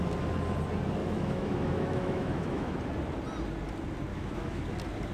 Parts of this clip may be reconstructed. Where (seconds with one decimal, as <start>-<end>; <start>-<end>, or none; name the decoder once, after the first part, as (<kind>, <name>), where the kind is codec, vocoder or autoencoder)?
1.0-2.8 (autoencoder, DAC-VAE); 4.1-4.6